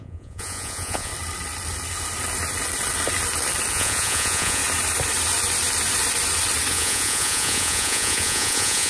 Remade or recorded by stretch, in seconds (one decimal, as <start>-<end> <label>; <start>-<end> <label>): 0.0-1.1 remade; 1.1-3.7 recorded; 3.7-4.6 remade; 4.6-6.7 recorded; 6.7-8.9 remade